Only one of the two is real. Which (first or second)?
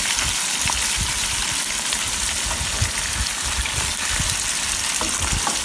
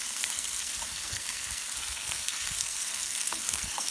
first